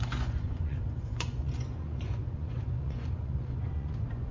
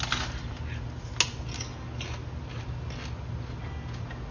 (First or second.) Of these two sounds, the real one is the second